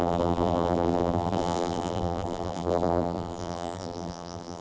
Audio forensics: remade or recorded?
remade